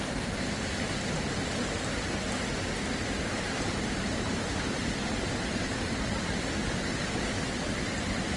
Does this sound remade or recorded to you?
recorded